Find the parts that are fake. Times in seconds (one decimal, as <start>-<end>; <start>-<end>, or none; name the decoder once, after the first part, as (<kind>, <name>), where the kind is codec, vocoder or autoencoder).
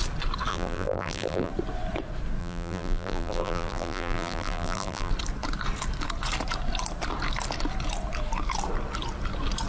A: 0.5-1.5 (vocoder, BigVGAN v2); 2.4-5.1